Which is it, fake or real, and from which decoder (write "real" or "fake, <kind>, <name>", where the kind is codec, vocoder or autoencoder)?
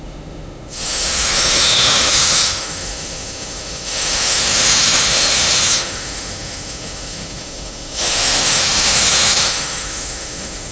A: fake, autoencoder, DAC-VAE